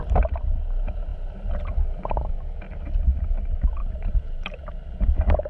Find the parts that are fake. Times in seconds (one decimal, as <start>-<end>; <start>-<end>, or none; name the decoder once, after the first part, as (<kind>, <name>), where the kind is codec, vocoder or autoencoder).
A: 1.1-2.3 (vocoder, BigVGAN v2); 3.8-4.7

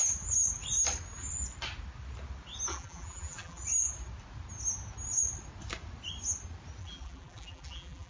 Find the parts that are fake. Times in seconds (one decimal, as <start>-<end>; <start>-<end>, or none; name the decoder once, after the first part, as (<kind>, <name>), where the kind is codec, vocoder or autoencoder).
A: 2.7-3.6 (vocoder, BigVGAN v2); 6.8-8.1